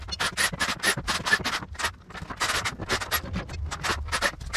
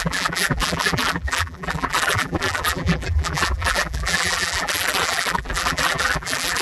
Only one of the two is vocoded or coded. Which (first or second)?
second